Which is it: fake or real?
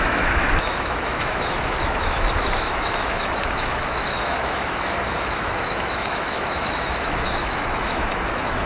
fake